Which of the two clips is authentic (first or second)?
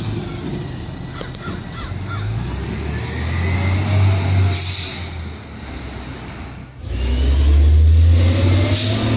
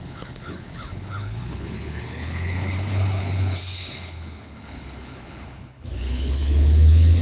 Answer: first